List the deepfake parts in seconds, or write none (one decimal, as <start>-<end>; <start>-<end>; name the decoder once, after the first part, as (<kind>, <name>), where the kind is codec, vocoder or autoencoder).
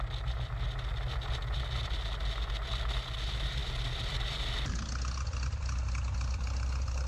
none